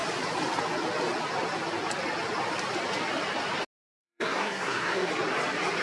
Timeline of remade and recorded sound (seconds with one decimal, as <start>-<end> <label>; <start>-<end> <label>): 0.0-3.9 recorded; 3.9-5.1 remade; 5.1-5.8 recorded